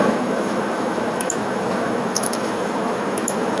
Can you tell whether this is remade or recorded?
remade